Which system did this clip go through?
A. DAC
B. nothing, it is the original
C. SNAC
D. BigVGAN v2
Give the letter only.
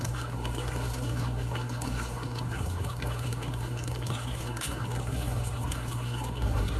C